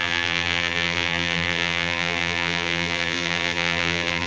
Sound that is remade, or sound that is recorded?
remade